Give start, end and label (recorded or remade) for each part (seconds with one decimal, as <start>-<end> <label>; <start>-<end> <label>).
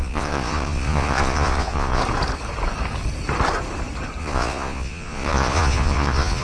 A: 0.0-2.0 remade; 2.0-4.2 recorded; 4.2-6.4 remade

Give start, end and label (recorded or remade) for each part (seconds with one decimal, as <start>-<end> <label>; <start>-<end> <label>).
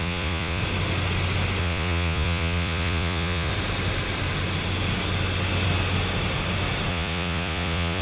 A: 0.0-0.6 remade; 0.6-1.6 recorded; 1.6-3.5 remade; 3.5-6.9 recorded; 6.9-8.0 remade